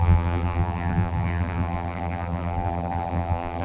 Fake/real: fake